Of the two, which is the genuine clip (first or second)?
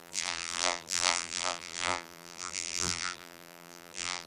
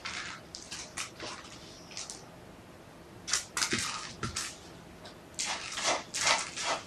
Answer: second